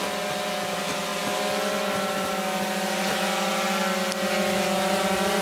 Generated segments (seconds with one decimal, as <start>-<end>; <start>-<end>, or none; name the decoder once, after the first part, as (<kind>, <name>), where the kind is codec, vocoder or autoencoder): none